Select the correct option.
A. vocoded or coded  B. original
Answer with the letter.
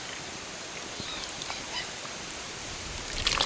A